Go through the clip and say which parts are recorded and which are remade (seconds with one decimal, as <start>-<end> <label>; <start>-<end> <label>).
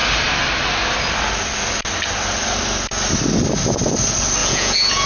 0.0-4.4 recorded; 4.4-5.1 remade